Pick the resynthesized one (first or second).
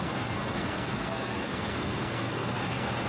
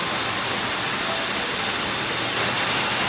first